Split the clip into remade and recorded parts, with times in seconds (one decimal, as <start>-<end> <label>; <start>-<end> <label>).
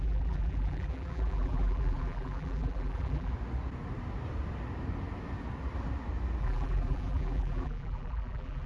0.0-3.3 remade; 3.3-6.4 recorded; 6.4-8.7 remade